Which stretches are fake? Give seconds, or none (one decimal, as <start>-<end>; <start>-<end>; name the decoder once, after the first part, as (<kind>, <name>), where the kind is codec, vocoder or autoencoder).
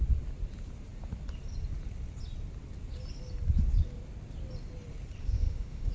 5.2-5.9 (autoencoder, DAC-VAE)